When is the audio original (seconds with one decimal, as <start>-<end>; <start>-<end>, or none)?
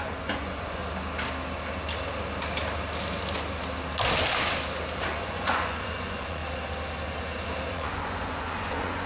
0.8-5.0; 6.4-7.7